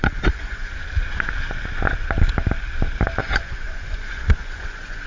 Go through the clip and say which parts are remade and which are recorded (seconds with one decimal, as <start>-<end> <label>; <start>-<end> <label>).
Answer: 0.0-0.7 remade; 0.7-3.2 recorded; 3.2-5.1 remade